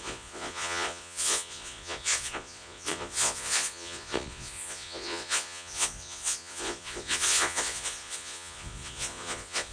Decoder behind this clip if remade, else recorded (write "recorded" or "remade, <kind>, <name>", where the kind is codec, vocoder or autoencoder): remade, vocoder, Vocos